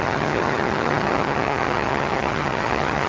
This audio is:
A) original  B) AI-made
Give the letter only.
B